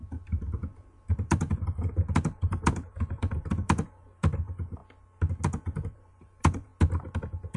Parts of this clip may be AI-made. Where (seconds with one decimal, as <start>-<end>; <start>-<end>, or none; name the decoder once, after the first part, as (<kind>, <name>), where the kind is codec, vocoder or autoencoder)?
0.0-4.8 (vocoder, BigVGAN v2); 5.9-6.7